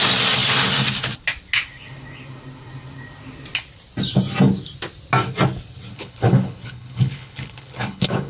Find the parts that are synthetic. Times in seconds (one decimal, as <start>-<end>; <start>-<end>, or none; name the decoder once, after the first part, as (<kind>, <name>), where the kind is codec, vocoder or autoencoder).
5.9-8.3 (codec, HILCodec)